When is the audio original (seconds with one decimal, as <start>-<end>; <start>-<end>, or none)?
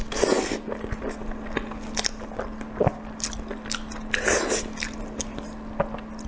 0.0-6.3